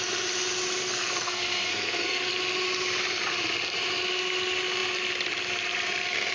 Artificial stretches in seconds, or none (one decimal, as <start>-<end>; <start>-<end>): 0.8-2.3